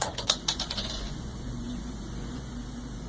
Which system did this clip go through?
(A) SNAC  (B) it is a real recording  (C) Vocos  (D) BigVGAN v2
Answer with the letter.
C